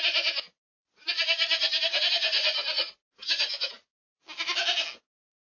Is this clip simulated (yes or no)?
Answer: no